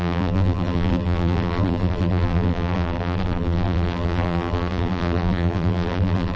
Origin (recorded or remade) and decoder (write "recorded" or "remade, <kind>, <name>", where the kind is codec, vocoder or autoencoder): remade, vocoder, BigVGAN v2